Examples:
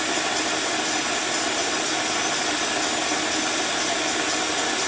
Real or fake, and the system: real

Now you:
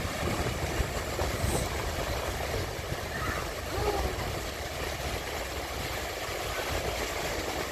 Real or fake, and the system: real